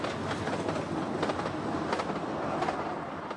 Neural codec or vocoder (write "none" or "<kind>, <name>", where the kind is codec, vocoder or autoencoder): none